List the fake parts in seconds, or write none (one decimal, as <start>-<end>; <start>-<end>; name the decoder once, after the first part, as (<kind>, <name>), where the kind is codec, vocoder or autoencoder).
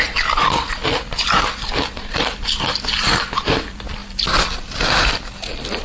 none